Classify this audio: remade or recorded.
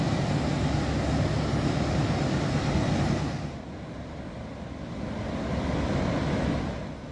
recorded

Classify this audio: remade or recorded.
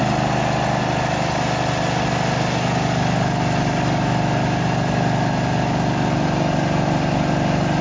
recorded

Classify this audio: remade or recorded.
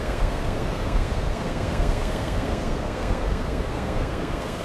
remade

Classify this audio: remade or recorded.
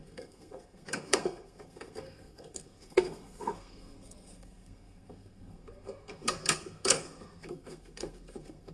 remade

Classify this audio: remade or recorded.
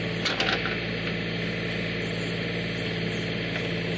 recorded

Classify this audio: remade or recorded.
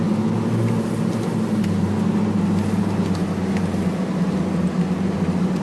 recorded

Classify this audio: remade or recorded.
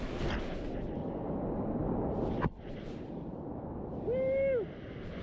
recorded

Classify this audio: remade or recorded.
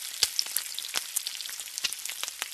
recorded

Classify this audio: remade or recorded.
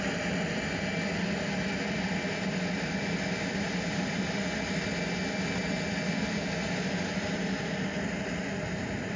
recorded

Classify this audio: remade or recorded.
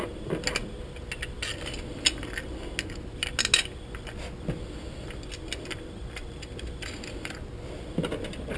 recorded